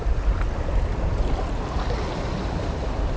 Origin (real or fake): real